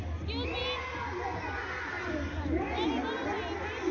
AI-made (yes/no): no